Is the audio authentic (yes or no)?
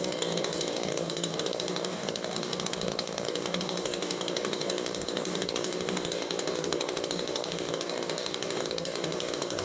no